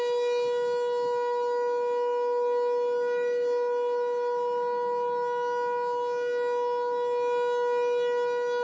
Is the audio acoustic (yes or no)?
yes